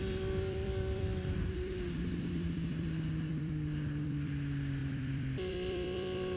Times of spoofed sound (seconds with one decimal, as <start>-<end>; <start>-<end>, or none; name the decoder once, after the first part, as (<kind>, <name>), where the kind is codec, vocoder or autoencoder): 0.0-6.4 (vocoder, BigVGAN v2)